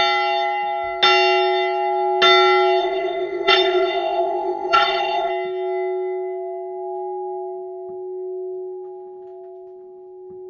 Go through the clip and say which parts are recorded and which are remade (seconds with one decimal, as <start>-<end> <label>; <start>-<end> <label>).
0.0-2.8 recorded; 2.8-5.3 remade; 5.3-10.5 recorded